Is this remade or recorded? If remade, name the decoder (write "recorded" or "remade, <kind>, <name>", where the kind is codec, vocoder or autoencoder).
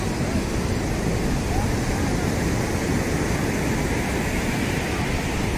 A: recorded